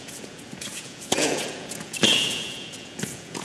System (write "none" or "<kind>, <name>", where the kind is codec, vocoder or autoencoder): vocoder, Vocos